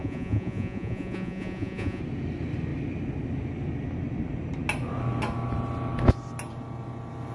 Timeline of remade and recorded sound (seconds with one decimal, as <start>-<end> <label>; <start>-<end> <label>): 0.0-2.0 remade; 2.0-7.3 recorded